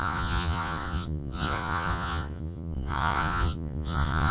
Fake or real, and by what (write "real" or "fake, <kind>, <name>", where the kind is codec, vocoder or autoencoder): fake, vocoder, Vocos